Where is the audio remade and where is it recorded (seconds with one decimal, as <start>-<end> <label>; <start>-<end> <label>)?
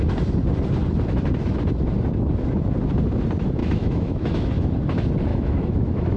0.0-3.6 recorded; 3.6-4.5 remade; 4.5-5.3 recorded; 5.3-6.2 remade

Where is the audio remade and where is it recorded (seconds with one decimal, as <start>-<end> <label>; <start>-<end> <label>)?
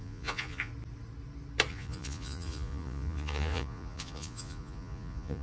0.0-0.7 remade; 0.7-1.7 recorded; 1.7-5.4 remade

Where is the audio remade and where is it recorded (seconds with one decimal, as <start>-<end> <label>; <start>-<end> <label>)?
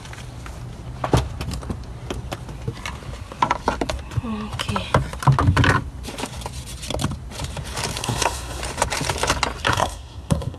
0.0-8.0 recorded; 8.0-8.6 remade; 8.6-9.7 recorded; 9.7-10.6 remade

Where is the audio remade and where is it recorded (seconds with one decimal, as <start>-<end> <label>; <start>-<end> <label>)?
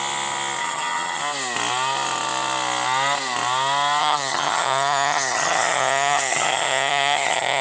0.0-0.6 recorded; 0.6-1.2 remade; 1.2-4.0 recorded; 4.0-7.6 remade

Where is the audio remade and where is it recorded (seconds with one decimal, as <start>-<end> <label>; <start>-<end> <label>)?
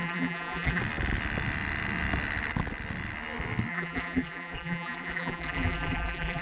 0.0-0.8 remade; 0.8-3.7 recorded; 3.7-6.4 remade